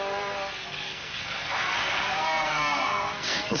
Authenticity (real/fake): fake